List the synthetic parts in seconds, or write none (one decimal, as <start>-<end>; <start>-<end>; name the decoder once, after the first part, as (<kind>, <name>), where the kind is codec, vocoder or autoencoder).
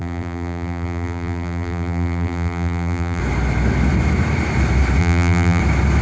0.0-3.2 (vocoder, BigVGAN v2); 5.0-5.6